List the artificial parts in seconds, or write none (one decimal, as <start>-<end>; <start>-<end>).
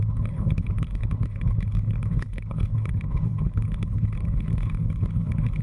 0.0-5.6